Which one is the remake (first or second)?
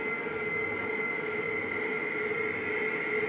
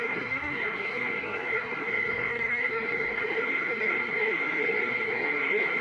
second